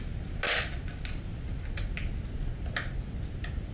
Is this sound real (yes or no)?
yes